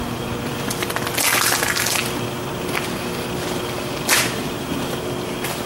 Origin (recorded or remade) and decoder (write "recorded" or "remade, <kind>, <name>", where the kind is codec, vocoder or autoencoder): recorded